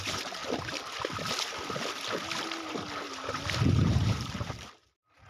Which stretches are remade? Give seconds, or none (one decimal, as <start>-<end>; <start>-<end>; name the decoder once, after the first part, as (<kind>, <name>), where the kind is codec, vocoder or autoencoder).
0.0-0.4 (vocoder, BigVGAN v2); 3.6-5.3